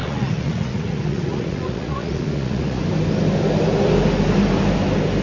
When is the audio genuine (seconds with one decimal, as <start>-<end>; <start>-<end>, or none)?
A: 2.8-5.2